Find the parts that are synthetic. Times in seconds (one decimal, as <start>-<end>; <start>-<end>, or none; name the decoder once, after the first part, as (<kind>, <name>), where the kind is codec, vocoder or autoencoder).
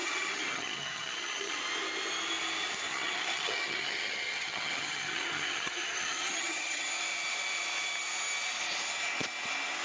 0.0-1.6 (vocoder, HiFi-GAN); 2.9-6.9